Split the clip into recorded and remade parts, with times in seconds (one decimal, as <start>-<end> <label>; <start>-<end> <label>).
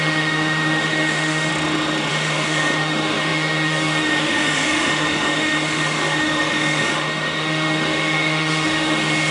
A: 0.0-1.5 remade; 1.5-2.1 recorded; 2.1-9.3 remade